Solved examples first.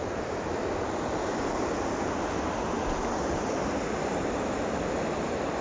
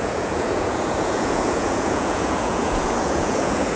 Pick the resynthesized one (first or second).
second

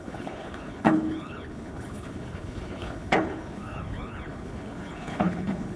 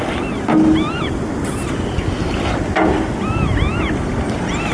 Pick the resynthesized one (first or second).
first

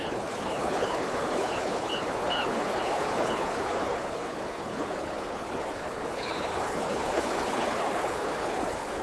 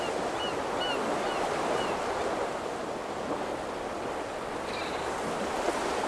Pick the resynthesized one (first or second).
first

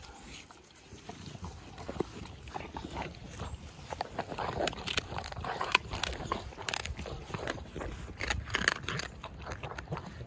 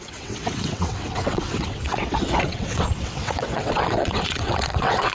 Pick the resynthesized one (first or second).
second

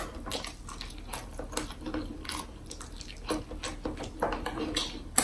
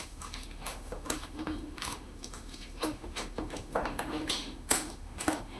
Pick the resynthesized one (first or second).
second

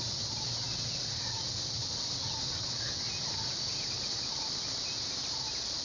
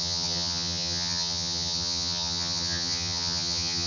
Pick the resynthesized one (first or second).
second